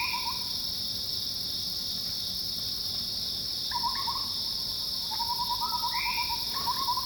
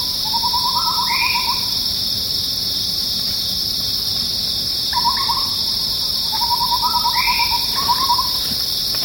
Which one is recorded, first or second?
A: first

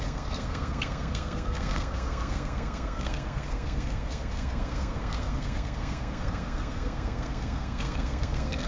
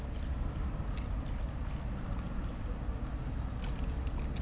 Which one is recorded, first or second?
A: second